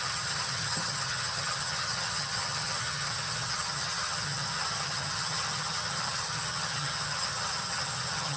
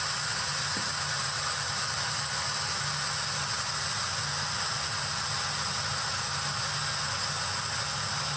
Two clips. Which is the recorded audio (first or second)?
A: second